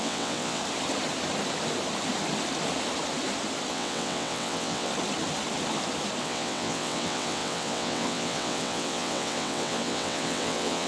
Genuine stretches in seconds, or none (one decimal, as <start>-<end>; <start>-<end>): 0.6-3.7; 4.9-6.2